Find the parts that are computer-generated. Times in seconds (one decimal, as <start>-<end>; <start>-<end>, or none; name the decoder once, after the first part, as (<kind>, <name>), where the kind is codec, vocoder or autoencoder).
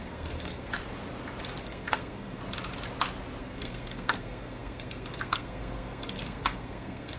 0.0-0.7 (codec, SNAC); 1.6-2.4; 3.4-7.2